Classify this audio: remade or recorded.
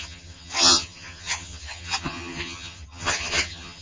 remade